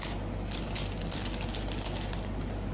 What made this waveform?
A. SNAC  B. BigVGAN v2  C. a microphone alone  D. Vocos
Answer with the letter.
C